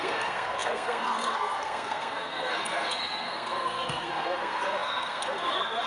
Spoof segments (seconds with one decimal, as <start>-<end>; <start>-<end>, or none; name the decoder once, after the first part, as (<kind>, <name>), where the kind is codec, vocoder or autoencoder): 0.0-5.9 (codec, SNAC)